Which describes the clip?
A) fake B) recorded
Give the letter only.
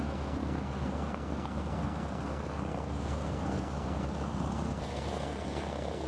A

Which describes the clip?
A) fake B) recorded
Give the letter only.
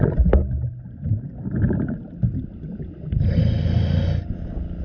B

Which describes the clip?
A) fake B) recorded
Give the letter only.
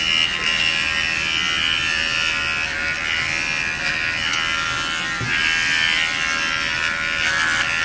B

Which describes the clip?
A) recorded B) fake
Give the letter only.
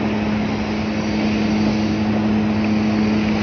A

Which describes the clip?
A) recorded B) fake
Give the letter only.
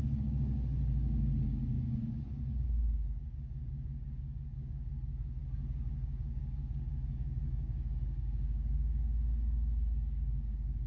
B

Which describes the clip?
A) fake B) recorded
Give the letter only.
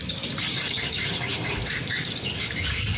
A